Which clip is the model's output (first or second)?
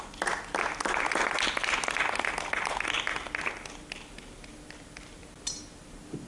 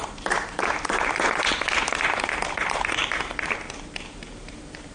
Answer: second